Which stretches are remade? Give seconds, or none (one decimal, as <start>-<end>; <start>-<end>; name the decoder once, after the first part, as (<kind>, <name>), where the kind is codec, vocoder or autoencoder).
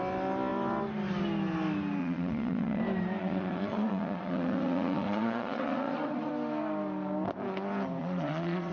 2.0-2.8 (vocoder, Vocos); 3.2-6.3; 8.0-8.7